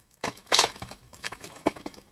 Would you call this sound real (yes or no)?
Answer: no